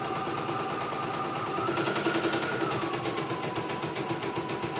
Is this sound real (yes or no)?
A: yes